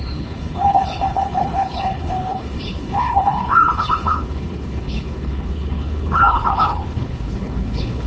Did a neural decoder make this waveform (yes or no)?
yes